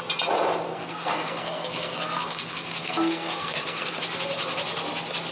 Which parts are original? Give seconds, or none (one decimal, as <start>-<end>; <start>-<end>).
0.0-0.7; 3.9-5.3